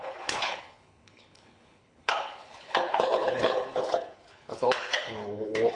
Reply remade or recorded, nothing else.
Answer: remade